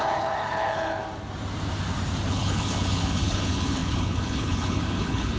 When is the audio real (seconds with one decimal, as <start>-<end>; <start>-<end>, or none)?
1.0-2.3